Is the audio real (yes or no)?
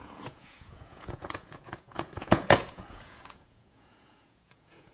no